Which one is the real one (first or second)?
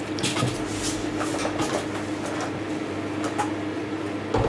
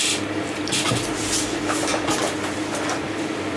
first